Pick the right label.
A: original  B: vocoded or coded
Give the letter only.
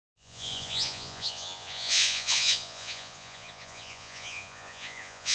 B